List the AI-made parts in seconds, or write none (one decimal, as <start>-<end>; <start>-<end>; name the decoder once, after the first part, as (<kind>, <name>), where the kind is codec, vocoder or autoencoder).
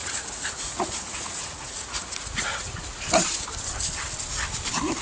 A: 0.0-3.0 (vocoder, Vocos)